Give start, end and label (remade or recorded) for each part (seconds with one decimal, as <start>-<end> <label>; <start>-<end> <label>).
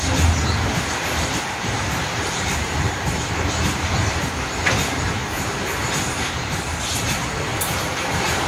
0.0-0.4 recorded; 0.4-4.4 remade; 4.4-5.2 recorded; 5.2-5.7 remade; 5.7-7.5 recorded; 7.5-8.5 remade